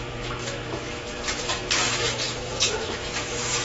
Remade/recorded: remade